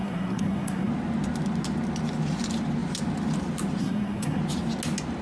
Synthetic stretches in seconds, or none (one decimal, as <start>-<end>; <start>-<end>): 0.0-0.9; 3.8-4.4

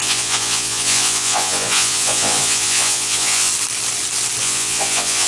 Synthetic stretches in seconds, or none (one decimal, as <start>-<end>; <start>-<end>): 0.0-3.5; 4.4-5.3